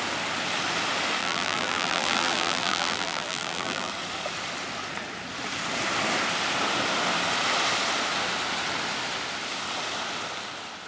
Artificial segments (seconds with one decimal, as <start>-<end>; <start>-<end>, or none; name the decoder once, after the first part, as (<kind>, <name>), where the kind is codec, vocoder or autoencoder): 1.2-3.9 (vocoder, BigVGAN v2)